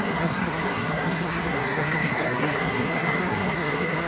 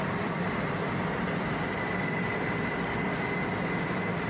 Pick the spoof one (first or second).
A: first